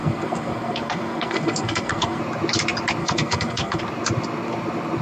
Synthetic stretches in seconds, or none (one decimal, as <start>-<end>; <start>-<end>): 0.0-2.2; 3.0-3.8